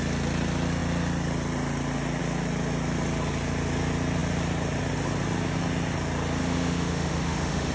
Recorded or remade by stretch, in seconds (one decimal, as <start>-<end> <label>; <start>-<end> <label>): 0.0-6.4 recorded; 6.4-7.7 remade